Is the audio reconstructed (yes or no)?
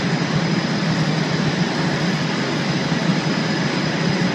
no